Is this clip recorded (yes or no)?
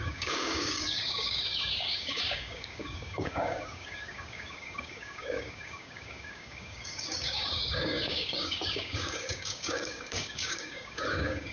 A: no